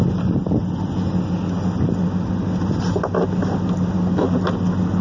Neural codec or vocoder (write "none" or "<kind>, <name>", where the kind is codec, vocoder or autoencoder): none